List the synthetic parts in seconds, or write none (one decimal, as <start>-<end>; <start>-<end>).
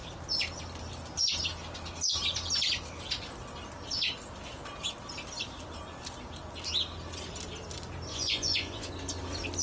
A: 8.1-8.9